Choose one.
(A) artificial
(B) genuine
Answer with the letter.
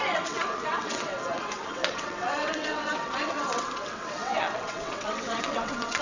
A